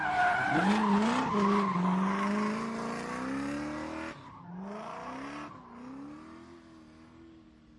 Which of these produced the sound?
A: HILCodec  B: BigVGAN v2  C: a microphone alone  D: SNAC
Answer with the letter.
C